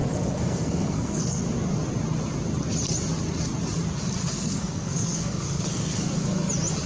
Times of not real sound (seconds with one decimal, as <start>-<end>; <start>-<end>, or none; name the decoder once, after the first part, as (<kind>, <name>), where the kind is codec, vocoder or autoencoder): 0.0-1.4 (codec, SNAC); 4.2-6.5